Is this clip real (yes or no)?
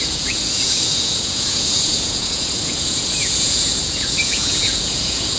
no